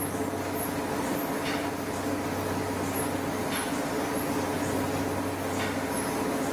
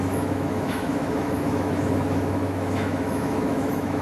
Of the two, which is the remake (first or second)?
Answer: second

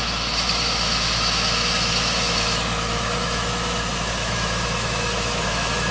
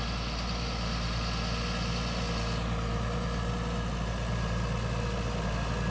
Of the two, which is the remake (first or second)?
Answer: first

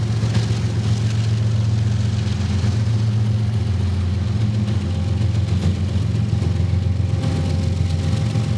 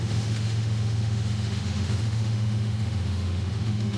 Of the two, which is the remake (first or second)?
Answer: second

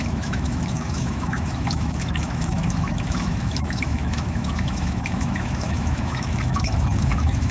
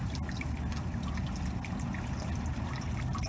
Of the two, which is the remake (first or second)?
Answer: first